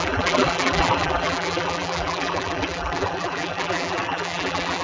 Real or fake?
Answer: fake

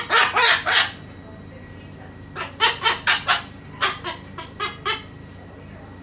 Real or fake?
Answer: real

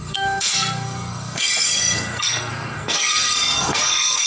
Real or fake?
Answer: fake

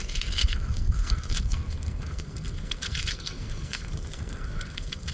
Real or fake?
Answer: fake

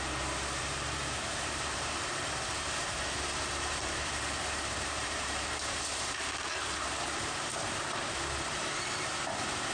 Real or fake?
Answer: fake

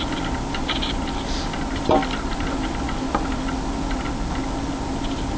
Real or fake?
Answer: fake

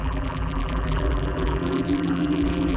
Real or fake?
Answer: fake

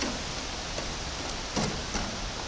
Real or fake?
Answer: fake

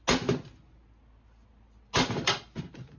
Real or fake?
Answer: real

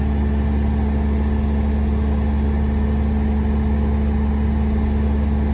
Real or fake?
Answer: real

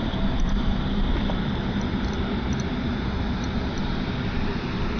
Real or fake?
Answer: fake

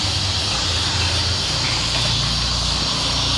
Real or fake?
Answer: real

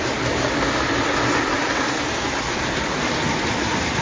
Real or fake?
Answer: real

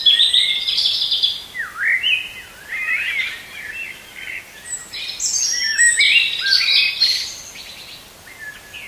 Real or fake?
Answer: real